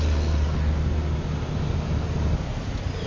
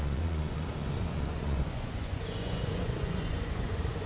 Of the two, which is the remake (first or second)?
second